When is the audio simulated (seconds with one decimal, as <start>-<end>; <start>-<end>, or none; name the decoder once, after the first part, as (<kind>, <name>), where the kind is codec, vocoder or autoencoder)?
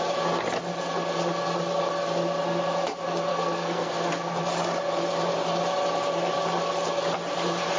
3.3-3.9 (codec, SNAC)